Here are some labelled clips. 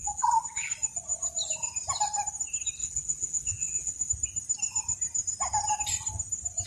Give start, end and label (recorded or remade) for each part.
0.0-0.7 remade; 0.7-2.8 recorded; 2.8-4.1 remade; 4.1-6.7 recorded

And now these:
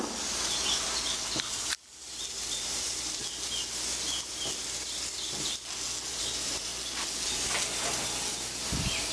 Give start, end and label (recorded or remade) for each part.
0.0-3.2 remade; 3.2-6.2 recorded; 6.2-6.7 remade; 6.7-8.3 recorded; 8.3-9.1 remade